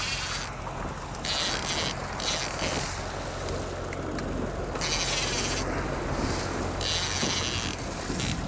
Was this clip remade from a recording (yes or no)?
no